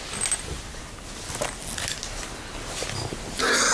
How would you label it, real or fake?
real